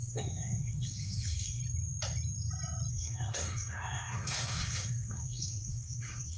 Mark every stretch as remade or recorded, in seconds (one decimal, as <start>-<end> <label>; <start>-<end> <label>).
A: 0.0-1.6 remade; 1.6-2.9 recorded; 2.9-6.4 remade